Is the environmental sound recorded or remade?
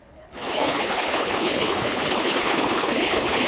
remade